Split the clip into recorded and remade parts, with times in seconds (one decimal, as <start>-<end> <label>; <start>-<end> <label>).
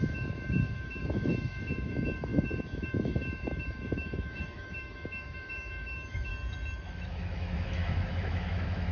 0.0-6.3 remade; 6.3-6.8 recorded; 6.8-8.9 remade